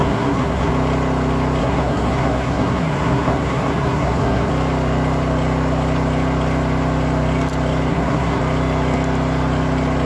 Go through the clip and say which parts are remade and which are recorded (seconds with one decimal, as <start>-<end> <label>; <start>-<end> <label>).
0.0-0.7 remade; 0.7-1.6 recorded; 1.6-4.5 remade; 4.5-7.9 recorded; 7.9-8.4 remade; 8.4-10.1 recorded